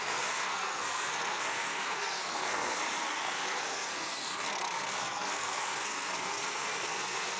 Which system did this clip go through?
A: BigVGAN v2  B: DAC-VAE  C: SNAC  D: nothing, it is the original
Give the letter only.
C